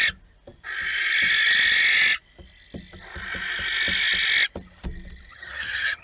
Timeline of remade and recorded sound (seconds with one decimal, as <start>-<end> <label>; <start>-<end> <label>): 0.0-5.3 recorded; 5.3-6.0 remade